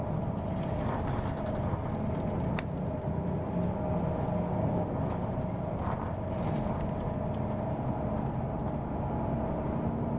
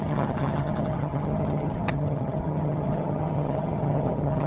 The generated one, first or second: second